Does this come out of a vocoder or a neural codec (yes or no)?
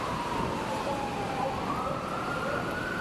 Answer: no